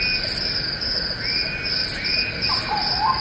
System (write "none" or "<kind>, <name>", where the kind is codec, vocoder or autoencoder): none